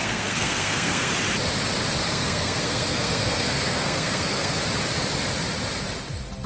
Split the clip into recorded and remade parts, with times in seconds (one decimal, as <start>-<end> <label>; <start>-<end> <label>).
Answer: 0.0-1.1 remade; 1.1-2.1 recorded; 2.1-4.6 remade; 4.6-6.5 recorded